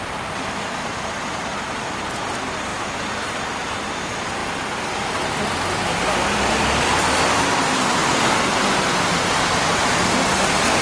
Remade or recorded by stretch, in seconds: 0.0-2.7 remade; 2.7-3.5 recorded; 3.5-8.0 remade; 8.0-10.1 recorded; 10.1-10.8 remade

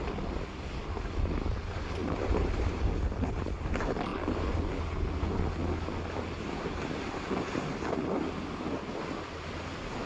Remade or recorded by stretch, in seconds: 0.0-2.0 recorded; 2.0-2.9 remade; 2.9-10.1 recorded

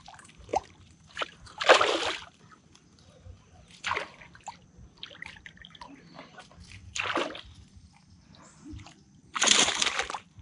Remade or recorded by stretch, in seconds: 0.0-0.5 recorded; 0.5-1.9 remade; 1.9-9.2 recorded; 9.2-10.4 remade

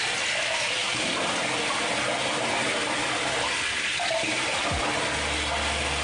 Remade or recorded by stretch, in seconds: 0.0-6.0 recorded

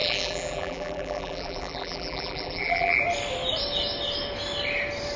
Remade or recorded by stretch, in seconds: 0.0-3.0 remade; 3.0-5.2 recorded